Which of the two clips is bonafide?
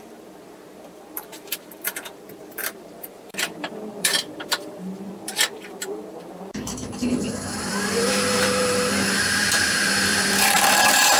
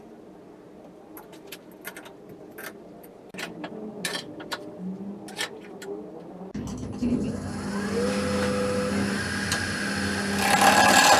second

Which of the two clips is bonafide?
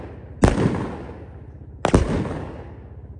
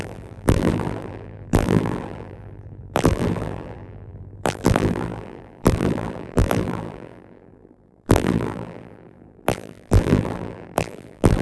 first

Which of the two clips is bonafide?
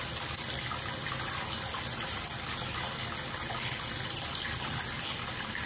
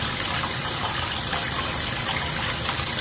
first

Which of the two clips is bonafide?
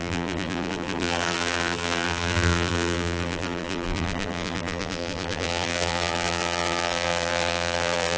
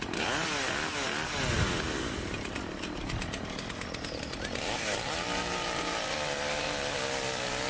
second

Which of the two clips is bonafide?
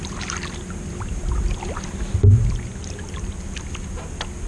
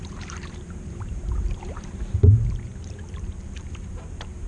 first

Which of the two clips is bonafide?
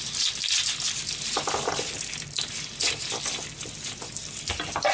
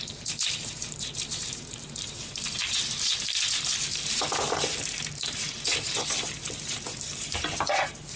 first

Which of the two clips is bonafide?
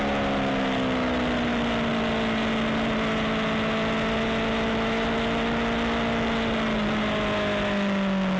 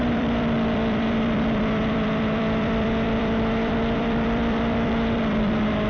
first